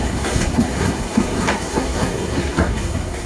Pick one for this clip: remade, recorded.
remade